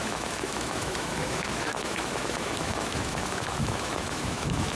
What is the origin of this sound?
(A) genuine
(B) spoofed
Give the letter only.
B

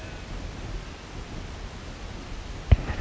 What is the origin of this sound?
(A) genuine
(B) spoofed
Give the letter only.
A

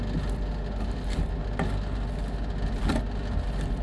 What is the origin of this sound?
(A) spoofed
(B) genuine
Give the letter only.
B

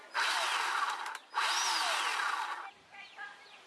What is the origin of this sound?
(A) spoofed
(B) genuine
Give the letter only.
B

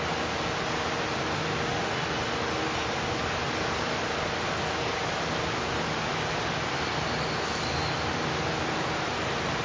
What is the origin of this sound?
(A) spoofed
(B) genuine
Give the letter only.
B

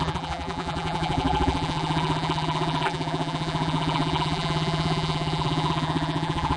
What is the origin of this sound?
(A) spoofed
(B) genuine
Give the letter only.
A